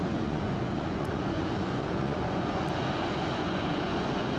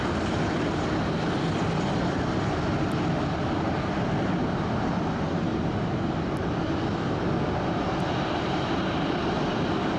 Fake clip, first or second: first